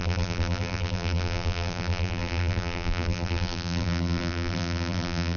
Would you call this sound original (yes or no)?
no